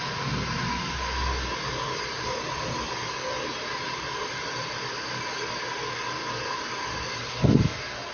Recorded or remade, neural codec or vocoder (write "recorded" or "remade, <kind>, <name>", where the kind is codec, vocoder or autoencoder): recorded